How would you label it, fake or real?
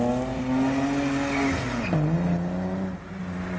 real